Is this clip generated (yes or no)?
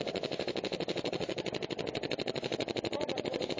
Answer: yes